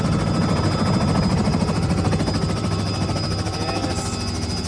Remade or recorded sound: recorded